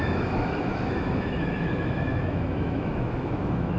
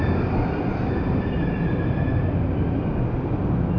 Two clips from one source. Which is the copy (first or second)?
first